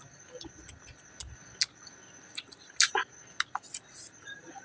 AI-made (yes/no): no